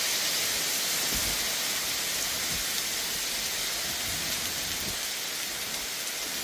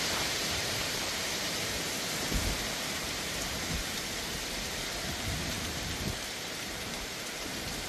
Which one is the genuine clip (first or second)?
first